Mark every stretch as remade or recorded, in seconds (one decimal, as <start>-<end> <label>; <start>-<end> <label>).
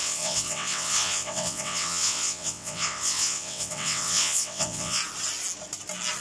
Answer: 0.0-5.0 remade; 5.0-6.2 recorded